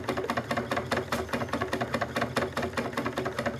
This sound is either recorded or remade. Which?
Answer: recorded